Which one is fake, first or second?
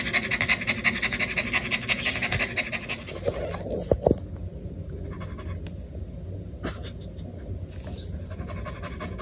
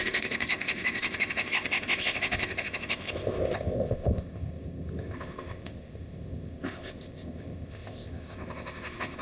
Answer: second